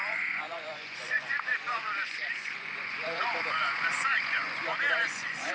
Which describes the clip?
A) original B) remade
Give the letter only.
B